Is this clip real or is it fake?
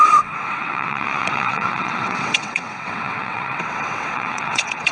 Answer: fake